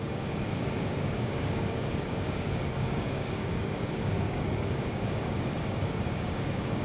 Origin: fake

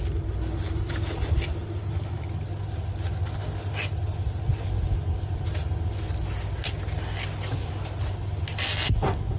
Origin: real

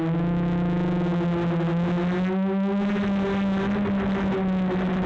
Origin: real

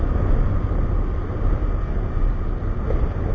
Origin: real